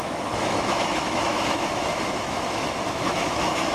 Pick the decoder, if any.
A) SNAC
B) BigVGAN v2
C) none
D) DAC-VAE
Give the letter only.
D